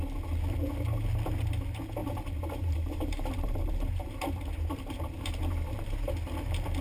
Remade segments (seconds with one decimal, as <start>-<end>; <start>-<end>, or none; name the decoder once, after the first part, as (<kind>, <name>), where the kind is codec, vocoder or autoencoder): 2.0-6.1 (vocoder, BigVGAN v2)